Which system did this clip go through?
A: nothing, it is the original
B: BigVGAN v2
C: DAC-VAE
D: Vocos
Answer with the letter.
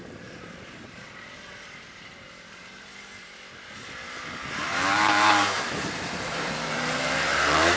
B